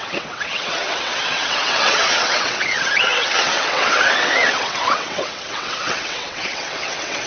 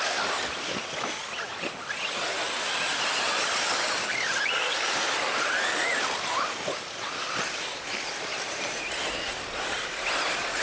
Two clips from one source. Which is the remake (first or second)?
first